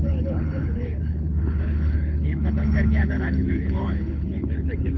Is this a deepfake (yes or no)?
yes